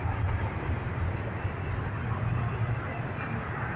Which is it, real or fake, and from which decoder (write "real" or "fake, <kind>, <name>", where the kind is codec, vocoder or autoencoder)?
real